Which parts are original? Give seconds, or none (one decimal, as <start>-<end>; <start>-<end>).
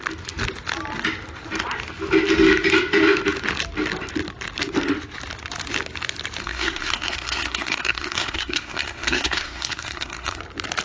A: 0.0-6.4; 10.4-10.8